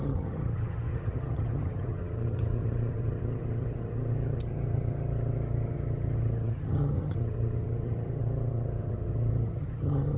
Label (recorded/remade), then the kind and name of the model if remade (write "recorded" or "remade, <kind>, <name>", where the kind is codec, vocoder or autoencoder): remade, vocoder, HiFi-GAN